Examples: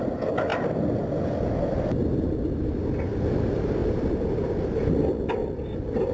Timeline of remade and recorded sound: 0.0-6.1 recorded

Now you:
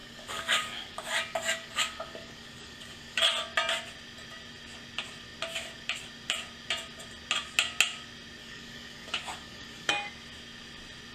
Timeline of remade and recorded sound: 0.0-3.2 remade; 3.2-8.4 recorded; 8.4-9.9 remade; 9.9-11.1 recorded